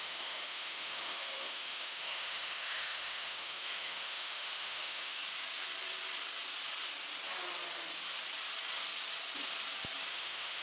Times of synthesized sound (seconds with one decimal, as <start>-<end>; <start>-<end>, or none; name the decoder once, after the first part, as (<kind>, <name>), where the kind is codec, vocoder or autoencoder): 0.0-5.2 (autoencoder, DAC-VAE); 10.1-10.6